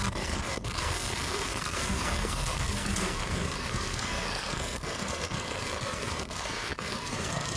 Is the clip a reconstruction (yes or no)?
yes